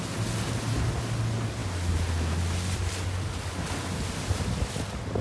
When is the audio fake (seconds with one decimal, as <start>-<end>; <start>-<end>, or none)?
none